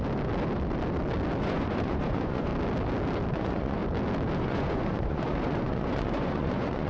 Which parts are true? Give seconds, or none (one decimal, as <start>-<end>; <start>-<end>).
0.0-1.4; 2.5-3.3; 3.8-4.4